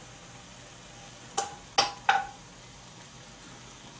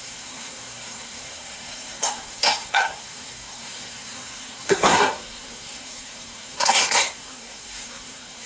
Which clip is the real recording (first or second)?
first